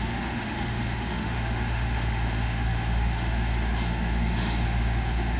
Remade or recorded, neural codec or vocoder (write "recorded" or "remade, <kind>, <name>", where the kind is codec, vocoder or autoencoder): remade, autoencoder, DAC-VAE